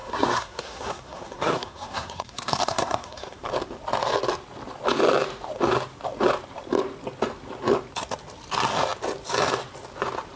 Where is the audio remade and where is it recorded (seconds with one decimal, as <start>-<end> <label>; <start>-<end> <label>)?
0.0-3.5 remade; 3.5-10.4 recorded